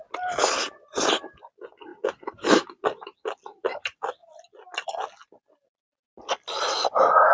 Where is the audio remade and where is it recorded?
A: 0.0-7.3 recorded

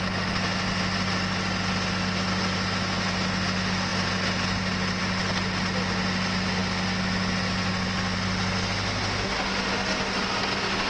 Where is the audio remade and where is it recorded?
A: 0.0-10.9 recorded

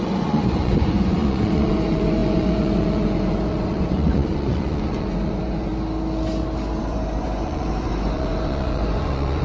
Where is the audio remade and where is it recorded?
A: 0.0-5.7 remade; 5.7-6.8 recorded; 6.8-9.4 remade

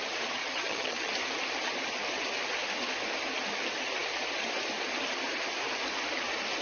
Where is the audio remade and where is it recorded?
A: 0.0-0.4 recorded; 0.4-1.1 remade; 1.1-6.6 recorded

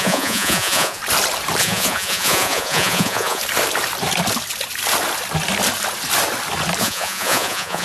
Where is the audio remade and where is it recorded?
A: 0.0-1.0 remade; 1.0-1.6 recorded; 1.6-3.4 remade; 3.4-6.8 recorded; 6.8-7.8 remade

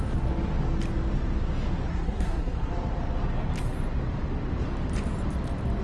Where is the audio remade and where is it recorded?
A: 0.0-1.9 recorded; 1.9-2.7 remade; 2.7-5.8 recorded

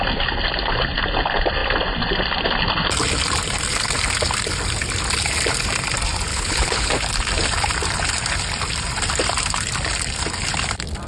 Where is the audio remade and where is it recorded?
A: 0.0-6.3 recorded; 6.3-6.9 remade; 6.9-11.1 recorded

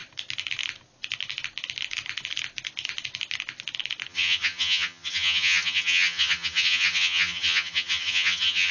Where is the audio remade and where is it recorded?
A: 0.0-4.1 recorded; 4.1-8.7 remade